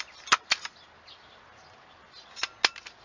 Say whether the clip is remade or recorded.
recorded